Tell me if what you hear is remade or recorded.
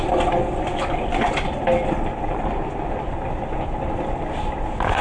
recorded